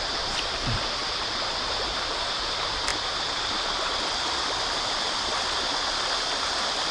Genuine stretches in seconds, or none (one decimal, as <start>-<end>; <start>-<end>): 0.0-6.9